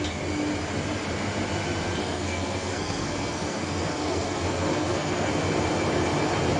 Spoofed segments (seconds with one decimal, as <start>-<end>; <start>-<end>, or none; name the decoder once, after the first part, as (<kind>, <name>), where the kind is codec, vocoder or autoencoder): 2.0-5.3 (codec, SNAC)